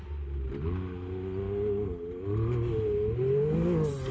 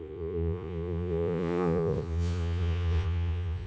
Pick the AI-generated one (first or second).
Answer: second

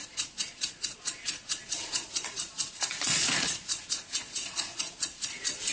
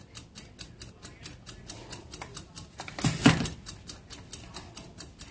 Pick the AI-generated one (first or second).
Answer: first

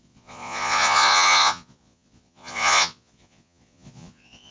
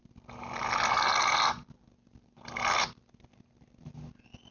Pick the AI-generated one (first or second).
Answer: first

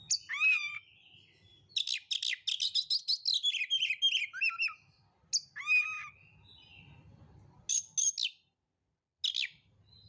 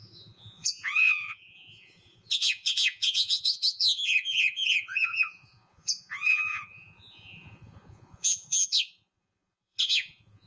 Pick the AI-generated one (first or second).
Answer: second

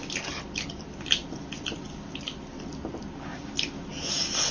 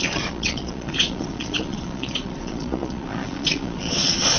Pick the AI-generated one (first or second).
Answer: second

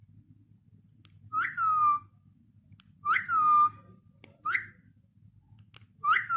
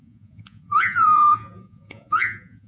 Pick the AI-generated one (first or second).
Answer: second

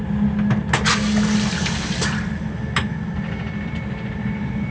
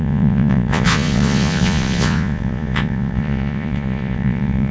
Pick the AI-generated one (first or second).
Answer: second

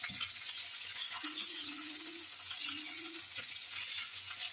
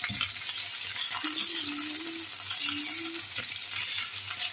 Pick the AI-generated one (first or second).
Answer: first